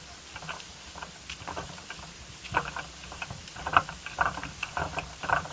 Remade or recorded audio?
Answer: recorded